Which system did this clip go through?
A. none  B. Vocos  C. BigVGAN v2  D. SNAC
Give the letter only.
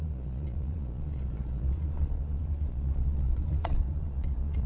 B